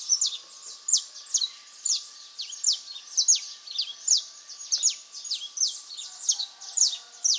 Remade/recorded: recorded